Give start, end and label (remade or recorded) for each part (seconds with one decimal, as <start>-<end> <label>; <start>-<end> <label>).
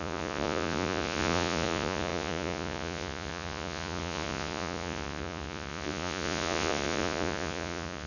0.0-8.1 remade